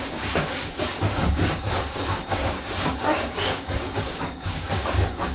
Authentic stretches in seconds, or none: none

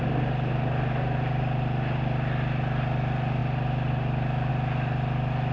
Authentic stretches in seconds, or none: 0.0-5.5